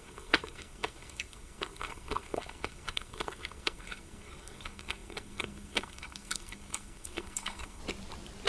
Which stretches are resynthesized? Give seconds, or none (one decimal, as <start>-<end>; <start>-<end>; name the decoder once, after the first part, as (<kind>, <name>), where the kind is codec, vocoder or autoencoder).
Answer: 0.0-7.8 (codec, SNAC)